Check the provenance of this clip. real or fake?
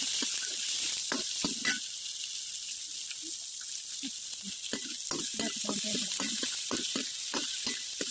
real